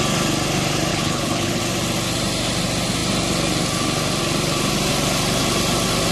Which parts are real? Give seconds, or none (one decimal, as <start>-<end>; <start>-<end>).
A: 0.0-0.9; 1.6-6.1